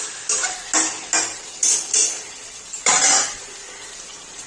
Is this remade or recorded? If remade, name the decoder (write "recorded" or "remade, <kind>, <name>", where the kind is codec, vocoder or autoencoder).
recorded